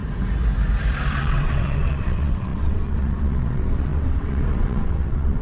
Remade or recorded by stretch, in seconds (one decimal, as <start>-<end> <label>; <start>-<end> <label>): 0.0-1.2 recorded; 1.2-5.4 remade